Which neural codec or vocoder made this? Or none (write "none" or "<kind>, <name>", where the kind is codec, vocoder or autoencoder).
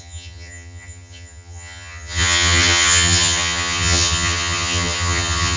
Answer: vocoder, HiFi-GAN